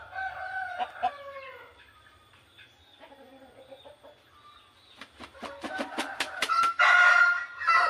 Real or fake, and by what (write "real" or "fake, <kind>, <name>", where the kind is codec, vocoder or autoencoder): real